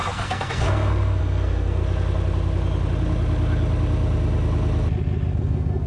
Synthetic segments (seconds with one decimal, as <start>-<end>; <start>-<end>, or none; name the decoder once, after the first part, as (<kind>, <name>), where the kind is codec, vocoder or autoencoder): 0.0-1.8 (codec, SNAC); 5.3-5.9